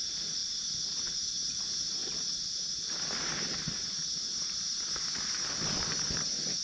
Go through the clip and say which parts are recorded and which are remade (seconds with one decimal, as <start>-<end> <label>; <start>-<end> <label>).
0.0-6.6 recorded

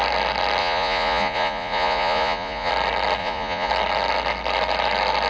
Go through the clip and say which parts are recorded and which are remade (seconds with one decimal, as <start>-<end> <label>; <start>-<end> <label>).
0.0-0.6 recorded; 0.6-2.7 remade; 2.7-3.2 recorded; 3.2-3.7 remade; 3.7-5.3 recorded

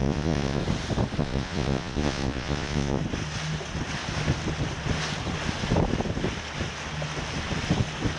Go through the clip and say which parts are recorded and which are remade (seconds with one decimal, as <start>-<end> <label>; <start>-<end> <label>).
0.0-0.6 remade; 0.6-1.2 recorded; 1.2-3.0 remade; 3.0-8.2 recorded

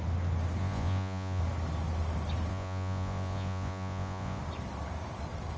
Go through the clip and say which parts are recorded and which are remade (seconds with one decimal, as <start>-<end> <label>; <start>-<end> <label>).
0.0-0.6 recorded; 0.6-1.4 remade; 1.4-2.5 recorded; 2.5-4.4 remade; 4.4-5.6 recorded

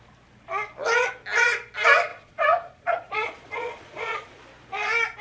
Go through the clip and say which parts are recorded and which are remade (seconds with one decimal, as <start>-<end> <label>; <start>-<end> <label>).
0.0-2.1 recorded; 2.1-4.4 remade; 4.4-5.2 recorded